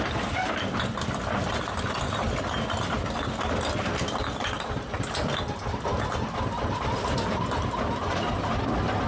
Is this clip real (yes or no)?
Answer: yes